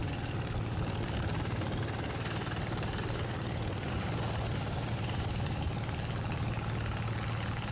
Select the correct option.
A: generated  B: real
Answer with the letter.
B